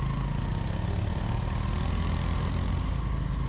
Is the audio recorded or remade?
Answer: recorded